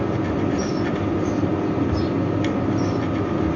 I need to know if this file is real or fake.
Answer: real